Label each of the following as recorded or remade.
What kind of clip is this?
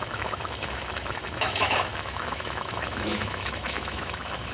remade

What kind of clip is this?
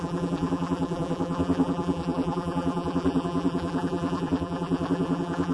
remade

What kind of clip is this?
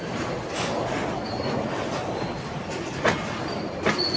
recorded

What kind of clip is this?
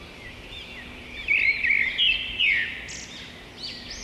recorded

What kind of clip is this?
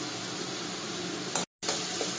recorded